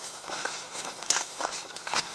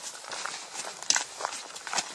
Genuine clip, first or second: second